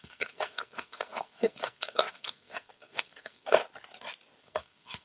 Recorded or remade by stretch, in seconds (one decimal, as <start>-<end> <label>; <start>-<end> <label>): 0.0-3.6 remade; 3.6-4.4 recorded; 4.4-5.0 remade